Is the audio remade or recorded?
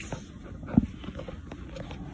recorded